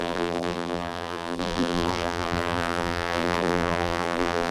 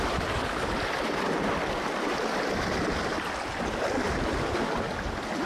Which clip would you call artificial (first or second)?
first